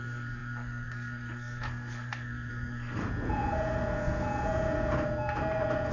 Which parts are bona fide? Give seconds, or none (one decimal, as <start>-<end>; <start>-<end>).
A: 3.0-5.9